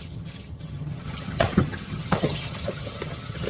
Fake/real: fake